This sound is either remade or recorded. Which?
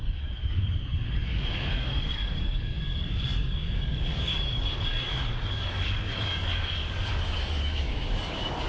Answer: remade